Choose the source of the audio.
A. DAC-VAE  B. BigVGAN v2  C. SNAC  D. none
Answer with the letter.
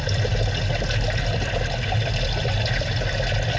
D